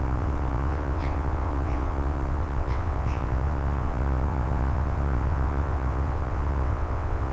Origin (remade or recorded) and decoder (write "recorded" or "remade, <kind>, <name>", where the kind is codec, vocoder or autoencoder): remade, vocoder, WaveNeXt